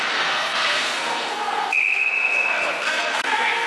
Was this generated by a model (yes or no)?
yes